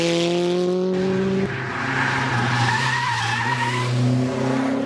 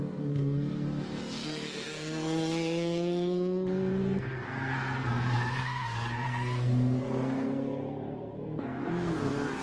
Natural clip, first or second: first